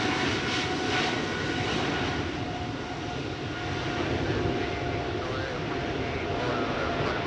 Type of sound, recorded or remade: recorded